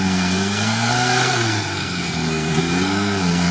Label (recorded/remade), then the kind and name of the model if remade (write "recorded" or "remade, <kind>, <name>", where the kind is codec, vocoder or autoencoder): remade, codec, SNAC